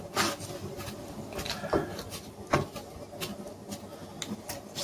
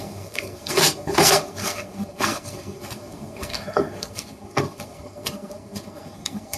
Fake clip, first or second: second